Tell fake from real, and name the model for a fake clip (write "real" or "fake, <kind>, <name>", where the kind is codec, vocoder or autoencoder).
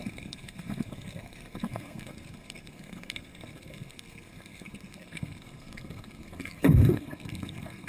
fake, codec, SNAC